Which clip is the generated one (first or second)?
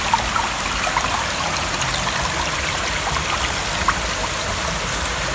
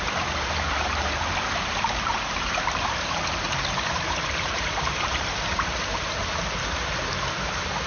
second